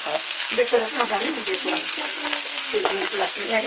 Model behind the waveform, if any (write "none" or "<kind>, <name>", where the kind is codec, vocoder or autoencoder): codec, SNAC